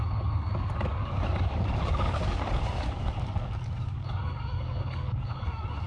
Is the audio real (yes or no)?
no